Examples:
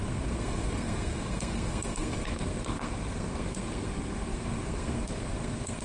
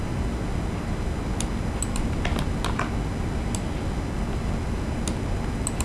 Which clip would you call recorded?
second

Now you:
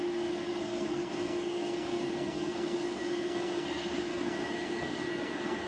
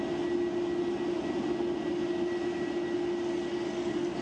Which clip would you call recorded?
second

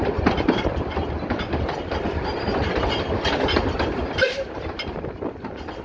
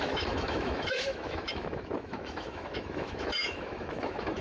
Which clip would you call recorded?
first